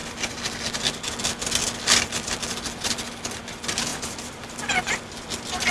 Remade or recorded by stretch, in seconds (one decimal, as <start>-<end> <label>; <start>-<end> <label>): 0.0-3.9 recorded; 3.9-4.8 remade; 4.8-5.7 recorded